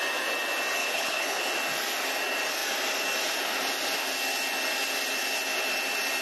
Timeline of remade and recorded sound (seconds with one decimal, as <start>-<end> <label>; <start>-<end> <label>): 0.0-0.8 recorded; 0.8-1.4 remade; 1.4-6.2 recorded